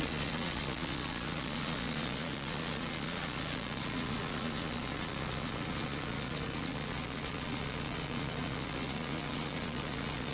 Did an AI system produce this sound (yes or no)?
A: yes